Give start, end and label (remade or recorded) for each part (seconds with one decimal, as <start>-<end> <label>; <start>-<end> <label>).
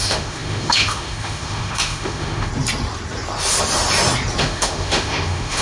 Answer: 0.0-2.5 remade; 2.5-4.4 recorded; 4.4-5.6 remade